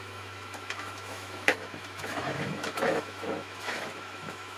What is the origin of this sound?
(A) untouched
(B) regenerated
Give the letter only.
B